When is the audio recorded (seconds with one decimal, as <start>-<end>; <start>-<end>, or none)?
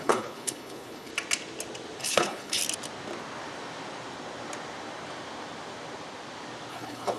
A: 1.1-2.0; 2.6-6.7